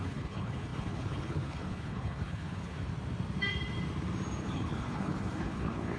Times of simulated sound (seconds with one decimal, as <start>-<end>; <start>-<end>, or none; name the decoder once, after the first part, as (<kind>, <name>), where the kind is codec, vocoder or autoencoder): 0.0-2.9 (codec, HILCodec); 4.4-6.0